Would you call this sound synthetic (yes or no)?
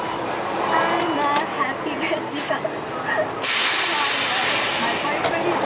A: no